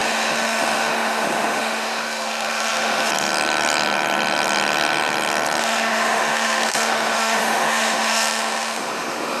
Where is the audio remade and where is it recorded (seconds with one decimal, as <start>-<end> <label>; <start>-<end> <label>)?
0.0-3.1 remade; 3.1-5.6 recorded; 5.6-9.4 remade